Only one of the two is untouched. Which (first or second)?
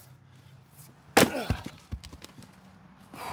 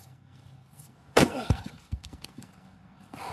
first